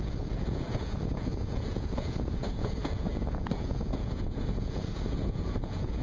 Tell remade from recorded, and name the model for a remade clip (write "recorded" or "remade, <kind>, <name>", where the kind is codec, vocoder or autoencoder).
remade, vocoder, Vocos